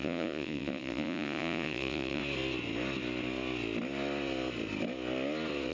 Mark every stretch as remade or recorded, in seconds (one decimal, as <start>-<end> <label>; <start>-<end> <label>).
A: 0.0-2.2 remade; 2.2-5.7 recorded